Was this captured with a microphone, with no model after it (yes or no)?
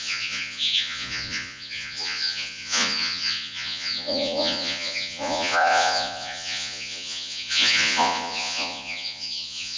no